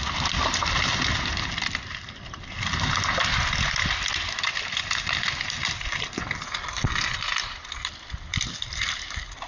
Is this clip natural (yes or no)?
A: yes